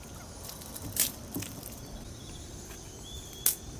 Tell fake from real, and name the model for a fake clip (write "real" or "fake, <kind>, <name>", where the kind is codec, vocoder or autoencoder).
real